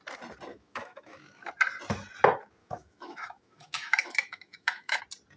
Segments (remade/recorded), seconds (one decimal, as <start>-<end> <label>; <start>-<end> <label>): 0.0-0.5 recorded; 0.5-1.5 remade; 1.5-2.6 recorded; 2.6-5.0 remade; 5.0-5.4 recorded